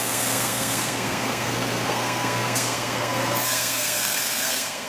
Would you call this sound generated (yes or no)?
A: yes